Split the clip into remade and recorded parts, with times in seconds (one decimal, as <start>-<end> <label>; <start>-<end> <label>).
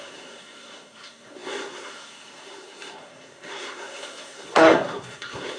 0.0-5.6 remade